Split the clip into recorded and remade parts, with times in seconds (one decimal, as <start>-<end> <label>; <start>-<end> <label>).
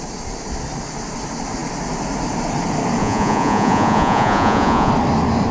0.0-3.0 recorded; 3.0-4.9 remade; 4.9-5.5 recorded